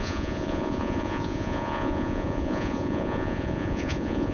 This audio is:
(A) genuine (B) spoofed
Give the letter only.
B